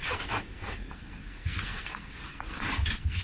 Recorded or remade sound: remade